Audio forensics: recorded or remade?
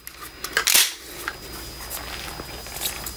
recorded